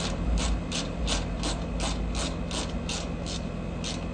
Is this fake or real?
real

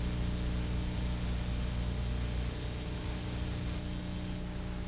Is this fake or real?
real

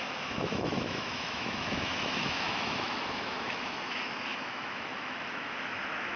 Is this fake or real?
fake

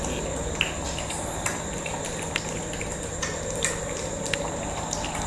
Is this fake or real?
real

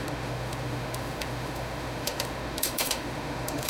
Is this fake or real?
fake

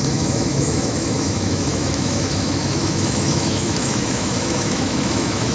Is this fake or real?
fake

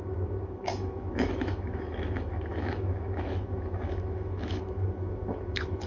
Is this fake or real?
fake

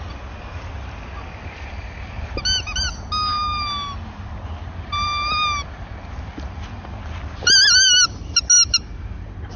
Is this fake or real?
real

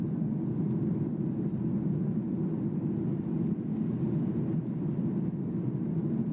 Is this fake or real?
real